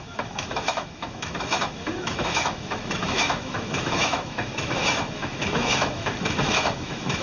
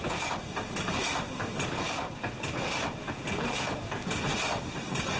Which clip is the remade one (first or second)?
first